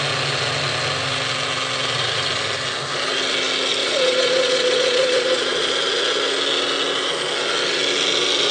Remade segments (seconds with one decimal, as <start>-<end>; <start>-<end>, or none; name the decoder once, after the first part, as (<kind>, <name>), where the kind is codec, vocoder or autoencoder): 3.8-5.7 (vocoder, Vocos)

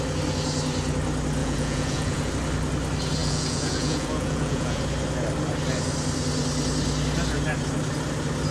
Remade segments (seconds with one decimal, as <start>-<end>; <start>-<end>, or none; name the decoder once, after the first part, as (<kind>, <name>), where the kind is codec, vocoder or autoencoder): 1.4-2.3 (vocoder, Vocos); 3.2-4.8

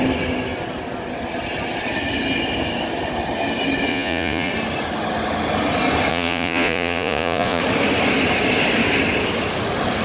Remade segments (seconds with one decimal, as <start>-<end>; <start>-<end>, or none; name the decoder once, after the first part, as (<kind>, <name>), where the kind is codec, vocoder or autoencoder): 3.9-4.5 (vocoder, Vocos); 6.1-7.6

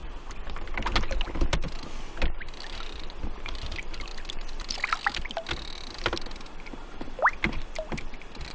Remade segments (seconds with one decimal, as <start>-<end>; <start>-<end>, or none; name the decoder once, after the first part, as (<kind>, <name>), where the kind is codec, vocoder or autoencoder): none